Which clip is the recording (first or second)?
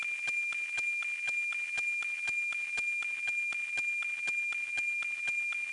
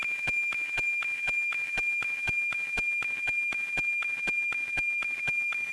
first